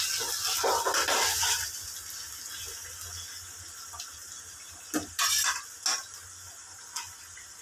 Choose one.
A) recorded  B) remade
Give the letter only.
A